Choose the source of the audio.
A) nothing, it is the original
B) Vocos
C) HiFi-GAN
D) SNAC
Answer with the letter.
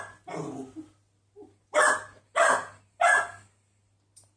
A